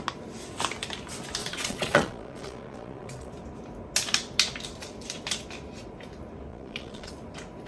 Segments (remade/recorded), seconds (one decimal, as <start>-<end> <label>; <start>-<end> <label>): 0.0-1.4 recorded; 1.4-3.3 remade; 3.3-6.5 recorded; 6.5-7.1 remade; 7.1-7.7 recorded